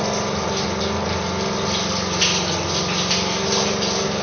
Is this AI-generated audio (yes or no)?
no